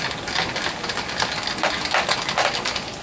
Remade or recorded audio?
recorded